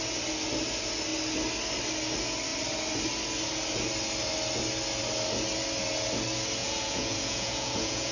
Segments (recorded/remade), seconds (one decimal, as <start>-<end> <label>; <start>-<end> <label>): 0.0-6.6 recorded; 6.6-8.1 remade